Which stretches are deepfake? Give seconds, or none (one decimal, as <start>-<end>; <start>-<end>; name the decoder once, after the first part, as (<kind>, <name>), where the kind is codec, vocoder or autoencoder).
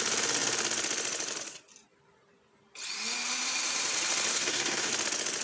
4.3-4.9 (codec, SNAC)